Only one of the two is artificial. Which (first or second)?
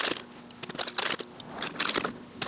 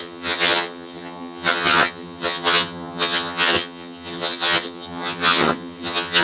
second